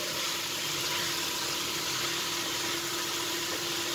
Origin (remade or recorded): remade